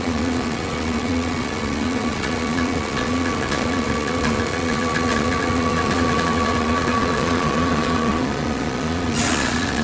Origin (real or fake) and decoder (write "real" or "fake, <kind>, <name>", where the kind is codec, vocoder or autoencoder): fake, vocoder, Vocos